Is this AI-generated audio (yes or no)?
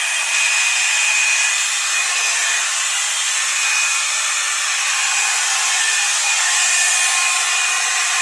no